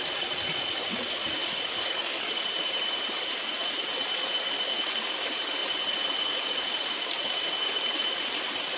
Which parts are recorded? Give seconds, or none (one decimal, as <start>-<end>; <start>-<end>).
0.0-1.4; 2.3-8.8